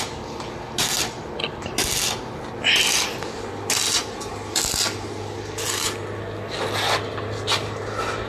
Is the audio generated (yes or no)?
no